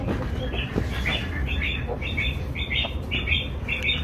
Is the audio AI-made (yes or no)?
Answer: no